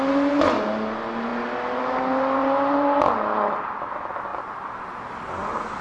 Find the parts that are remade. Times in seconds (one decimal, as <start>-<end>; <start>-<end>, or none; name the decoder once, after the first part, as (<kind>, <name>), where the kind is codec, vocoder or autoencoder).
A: 2.4-3.0 (vocoder, BigVGAN v2)

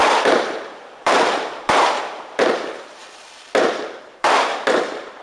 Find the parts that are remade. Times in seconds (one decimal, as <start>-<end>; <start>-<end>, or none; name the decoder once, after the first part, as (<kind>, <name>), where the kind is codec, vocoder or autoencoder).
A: 0.0-3.0 (vocoder, BigVGAN v2); 3.6-5.2

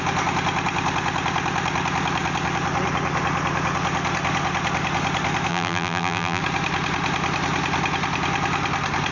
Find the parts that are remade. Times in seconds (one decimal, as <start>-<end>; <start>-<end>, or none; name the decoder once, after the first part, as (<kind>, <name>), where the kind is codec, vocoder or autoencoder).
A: 5.5-6.4 (vocoder, BigVGAN v2)

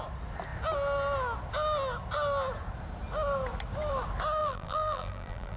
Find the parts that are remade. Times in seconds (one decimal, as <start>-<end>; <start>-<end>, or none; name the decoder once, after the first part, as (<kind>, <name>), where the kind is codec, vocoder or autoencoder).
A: 4.4-5.6 (vocoder, BigVGAN v2)

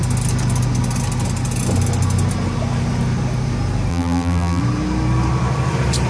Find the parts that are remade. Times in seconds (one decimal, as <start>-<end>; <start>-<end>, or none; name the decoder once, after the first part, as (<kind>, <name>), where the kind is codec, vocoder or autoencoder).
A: 3.9-4.6 (vocoder, BigVGAN v2)

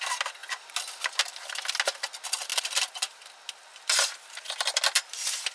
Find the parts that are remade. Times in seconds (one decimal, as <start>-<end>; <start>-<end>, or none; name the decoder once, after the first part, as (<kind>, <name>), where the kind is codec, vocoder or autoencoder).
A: none